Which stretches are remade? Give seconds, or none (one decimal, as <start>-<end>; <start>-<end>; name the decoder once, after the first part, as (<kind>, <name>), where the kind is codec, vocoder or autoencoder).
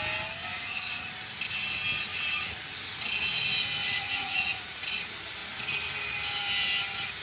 0.5-1.1 (vocoder, Vocos); 2.1-2.7; 3.8-4.9